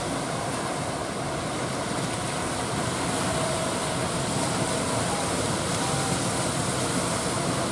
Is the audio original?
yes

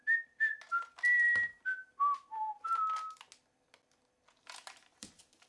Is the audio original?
yes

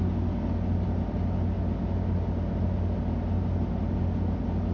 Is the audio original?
yes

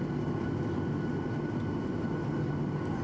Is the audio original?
yes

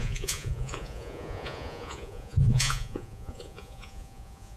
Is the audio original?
no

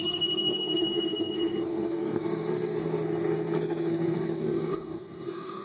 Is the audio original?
no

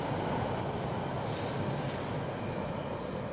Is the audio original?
yes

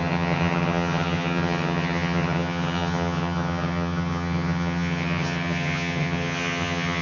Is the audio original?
no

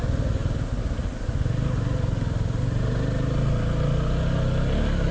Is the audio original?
yes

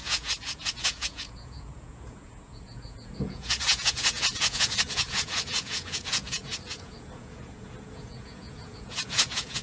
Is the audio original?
no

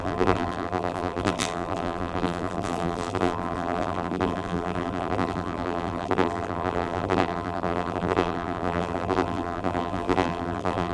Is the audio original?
no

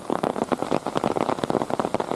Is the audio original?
yes